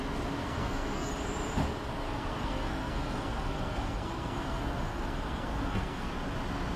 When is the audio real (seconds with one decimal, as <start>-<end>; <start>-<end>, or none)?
0.0-0.4; 1.1-2.0; 6.1-6.8